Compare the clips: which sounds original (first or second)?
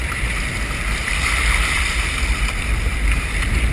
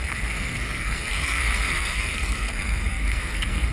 first